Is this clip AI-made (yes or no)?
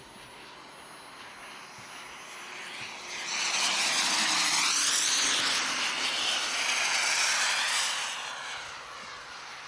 no